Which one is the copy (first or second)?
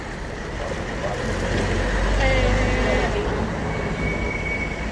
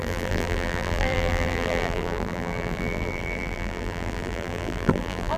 second